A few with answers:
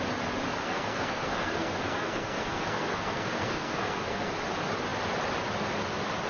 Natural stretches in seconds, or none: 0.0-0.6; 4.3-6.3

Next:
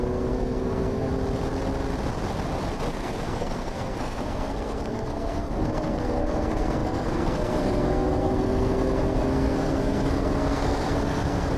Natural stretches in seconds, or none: 1.1-2.9

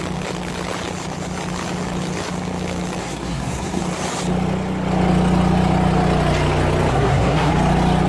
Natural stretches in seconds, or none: 0.0-3.0; 3.8-6.9; 7.5-8.1

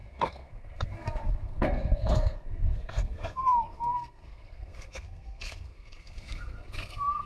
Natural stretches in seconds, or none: none

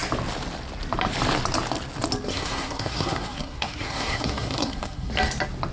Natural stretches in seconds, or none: 0.0-2.3; 5.1-5.7